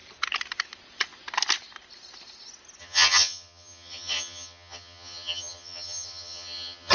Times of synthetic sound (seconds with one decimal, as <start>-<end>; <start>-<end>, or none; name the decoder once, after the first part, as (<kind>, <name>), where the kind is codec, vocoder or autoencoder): 2.8-6.9 (vocoder, HiFi-GAN)